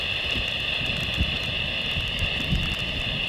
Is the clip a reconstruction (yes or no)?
no